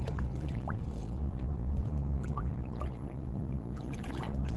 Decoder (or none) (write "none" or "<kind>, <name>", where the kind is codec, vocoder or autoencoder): vocoder, Vocos